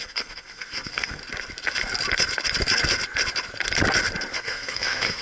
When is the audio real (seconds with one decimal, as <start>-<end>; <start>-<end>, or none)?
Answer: 1.2-4.3

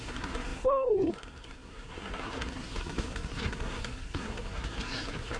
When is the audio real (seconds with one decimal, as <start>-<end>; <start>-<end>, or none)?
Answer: none

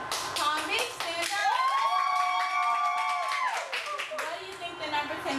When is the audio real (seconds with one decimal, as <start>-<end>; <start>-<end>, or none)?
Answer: 0.0-5.4

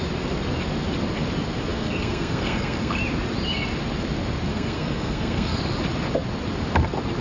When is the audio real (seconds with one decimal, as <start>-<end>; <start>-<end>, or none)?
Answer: 0.0-1.7; 3.0-4.5; 5.6-7.2